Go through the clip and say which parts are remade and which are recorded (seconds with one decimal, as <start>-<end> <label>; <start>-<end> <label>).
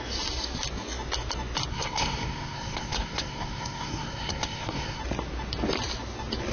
0.0-1.7 recorded; 1.7-5.0 remade; 5.0-6.5 recorded